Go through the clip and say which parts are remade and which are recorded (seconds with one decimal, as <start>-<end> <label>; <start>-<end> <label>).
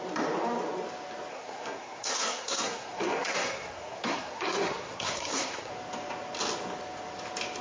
0.0-1.3 recorded; 1.3-5.7 remade; 5.7-7.6 recorded